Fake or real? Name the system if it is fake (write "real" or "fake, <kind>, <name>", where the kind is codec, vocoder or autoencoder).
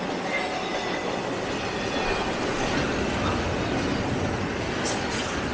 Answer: real